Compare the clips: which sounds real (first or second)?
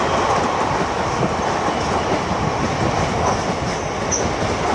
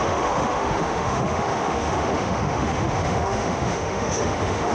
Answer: first